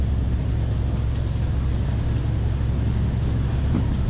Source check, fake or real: real